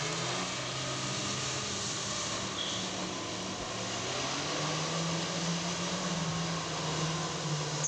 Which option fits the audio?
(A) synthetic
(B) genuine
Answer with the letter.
B